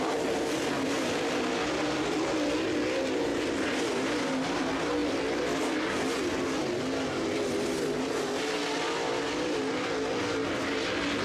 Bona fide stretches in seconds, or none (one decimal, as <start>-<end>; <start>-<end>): 0.0-11.2